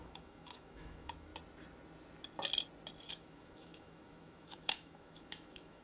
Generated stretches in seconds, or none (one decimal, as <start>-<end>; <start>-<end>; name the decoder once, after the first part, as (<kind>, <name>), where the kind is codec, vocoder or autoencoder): 0.0-1.3 (autoencoder, DAC-VAE); 3.1-5.8